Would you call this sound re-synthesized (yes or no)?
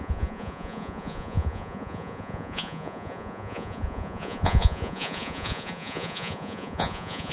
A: yes